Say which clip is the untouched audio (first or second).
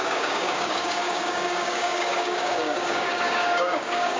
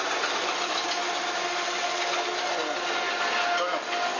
second